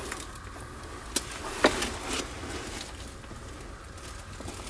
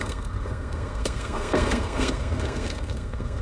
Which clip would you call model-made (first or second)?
second